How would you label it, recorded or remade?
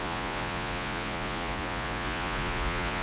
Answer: remade